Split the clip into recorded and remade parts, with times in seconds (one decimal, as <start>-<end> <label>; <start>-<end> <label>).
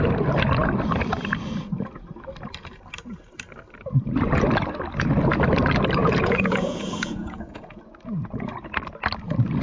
0.0-6.0 recorded; 6.0-7.8 remade; 7.8-9.6 recorded